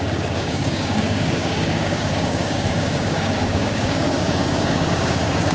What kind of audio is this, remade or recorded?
remade